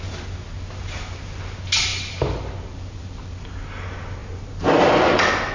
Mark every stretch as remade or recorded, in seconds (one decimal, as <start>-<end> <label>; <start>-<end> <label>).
0.0-5.5 recorded